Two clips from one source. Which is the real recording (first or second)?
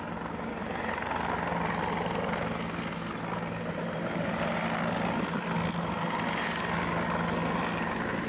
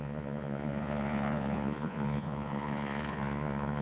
first